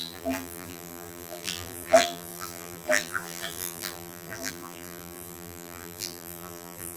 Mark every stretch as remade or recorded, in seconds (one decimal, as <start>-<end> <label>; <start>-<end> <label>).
0.0-7.0 remade